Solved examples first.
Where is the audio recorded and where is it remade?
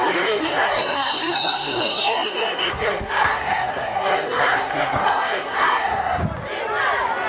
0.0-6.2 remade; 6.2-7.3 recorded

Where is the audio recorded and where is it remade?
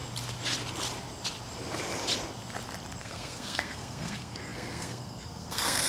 0.0-3.0 recorded; 3.0-5.9 remade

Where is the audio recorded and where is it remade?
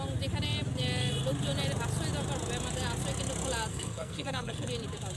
0.0-3.7 recorded; 3.7-4.7 remade; 4.7-5.2 recorded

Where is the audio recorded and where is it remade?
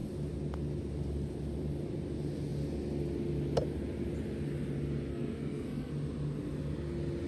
0.0-5.1 recorded; 5.1-5.9 remade; 5.9-7.3 recorded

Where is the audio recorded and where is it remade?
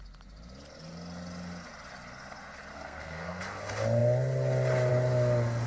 0.0-2.7 recorded; 2.7-3.4 remade; 3.4-5.7 recorded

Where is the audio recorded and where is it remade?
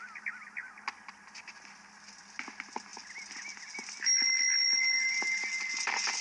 0.0-6.2 recorded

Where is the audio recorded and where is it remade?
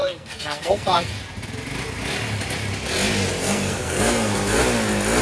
0.0-1.1 remade; 1.1-3.4 recorded; 3.4-4.6 remade; 4.6-5.2 recorded